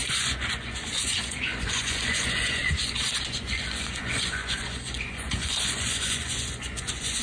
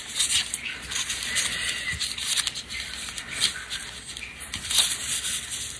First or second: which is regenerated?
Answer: first